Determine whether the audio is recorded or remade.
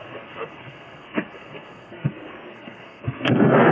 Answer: remade